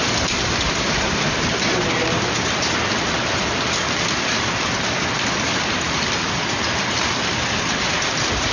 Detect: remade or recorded recorded